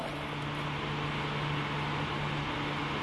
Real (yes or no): yes